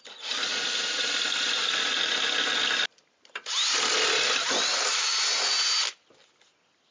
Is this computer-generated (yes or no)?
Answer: no